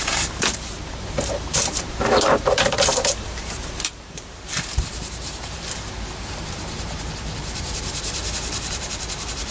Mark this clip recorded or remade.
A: remade